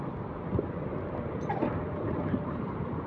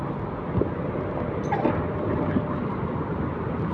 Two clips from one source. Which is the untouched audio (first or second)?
second